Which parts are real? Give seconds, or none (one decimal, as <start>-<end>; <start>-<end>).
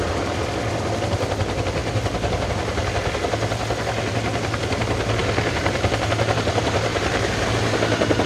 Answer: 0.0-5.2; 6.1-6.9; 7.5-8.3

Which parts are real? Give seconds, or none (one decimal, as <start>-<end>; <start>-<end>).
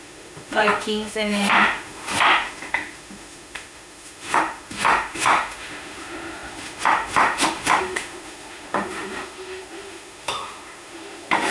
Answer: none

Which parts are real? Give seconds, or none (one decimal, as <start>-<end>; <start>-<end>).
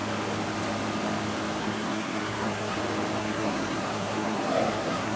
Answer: 0.0-1.6; 2.8-3.2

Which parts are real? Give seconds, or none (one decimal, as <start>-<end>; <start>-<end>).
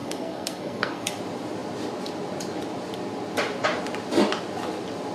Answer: 1.2-5.1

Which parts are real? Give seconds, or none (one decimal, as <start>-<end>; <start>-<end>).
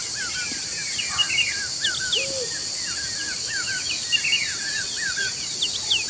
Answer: 0.0-3.4; 3.9-6.1